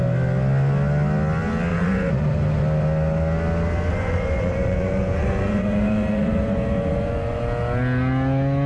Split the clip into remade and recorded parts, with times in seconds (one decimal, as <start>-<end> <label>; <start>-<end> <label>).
0.0-1.7 recorded; 1.7-2.2 remade; 2.2-3.9 recorded; 3.9-7.4 remade; 7.4-8.7 recorded